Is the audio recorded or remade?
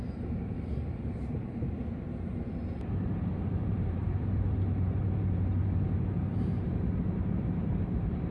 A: remade